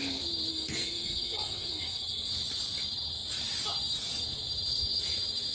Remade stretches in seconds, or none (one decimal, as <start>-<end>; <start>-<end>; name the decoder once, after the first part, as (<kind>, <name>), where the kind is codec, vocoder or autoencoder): 0.5-2.3 (codec, SNAC)